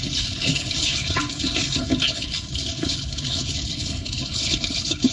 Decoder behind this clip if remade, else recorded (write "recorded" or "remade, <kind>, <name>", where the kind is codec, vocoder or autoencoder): remade, codec, HILCodec